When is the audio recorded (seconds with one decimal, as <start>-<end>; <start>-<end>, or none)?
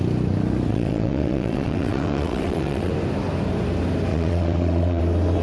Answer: 0.0-0.7; 2.9-4.1; 5.0-5.4